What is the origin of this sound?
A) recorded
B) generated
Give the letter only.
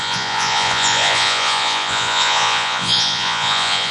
B